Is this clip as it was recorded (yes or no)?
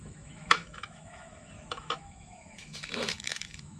no